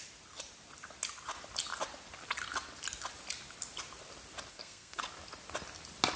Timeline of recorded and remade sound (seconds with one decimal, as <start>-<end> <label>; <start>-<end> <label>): 0.0-4.5 recorded; 4.5-5.0 remade; 5.0-6.2 recorded